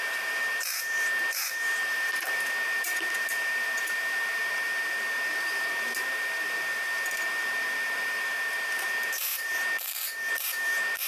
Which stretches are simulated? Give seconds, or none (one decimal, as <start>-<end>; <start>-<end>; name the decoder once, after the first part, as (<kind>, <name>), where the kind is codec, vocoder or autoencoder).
0.0-11.1 (vocoder, BigVGAN v2)